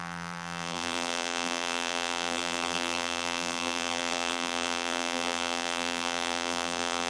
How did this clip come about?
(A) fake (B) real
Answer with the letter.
A